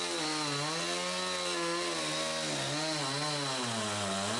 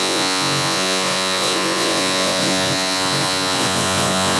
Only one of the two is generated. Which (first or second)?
second